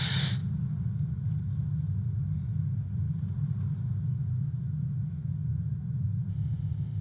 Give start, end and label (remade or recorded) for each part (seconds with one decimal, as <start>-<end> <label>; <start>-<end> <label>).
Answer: 0.0-6.3 recorded; 6.3-7.0 remade